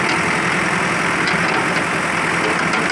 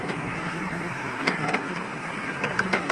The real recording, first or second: first